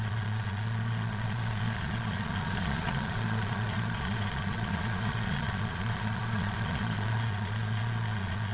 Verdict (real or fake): fake